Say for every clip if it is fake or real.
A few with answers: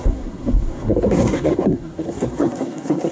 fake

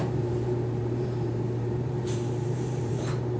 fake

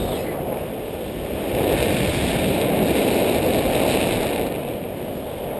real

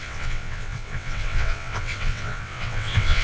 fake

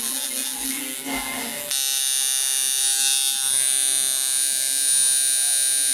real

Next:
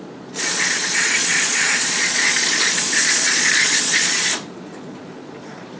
fake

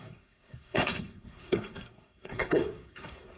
fake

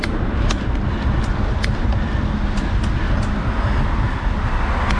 real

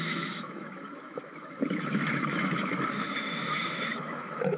fake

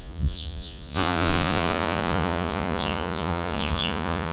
fake